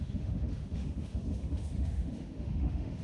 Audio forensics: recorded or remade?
remade